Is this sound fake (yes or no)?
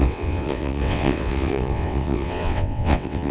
yes